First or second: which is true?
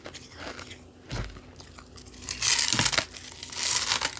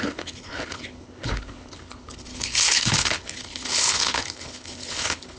first